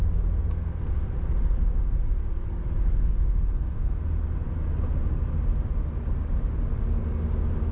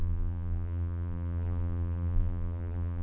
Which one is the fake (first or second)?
second